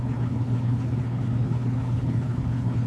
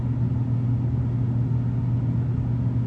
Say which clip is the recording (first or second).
second